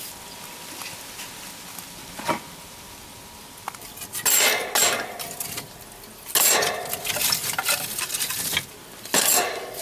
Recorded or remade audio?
recorded